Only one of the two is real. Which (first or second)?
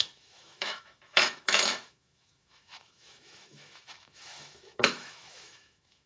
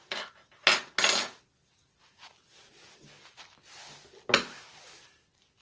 second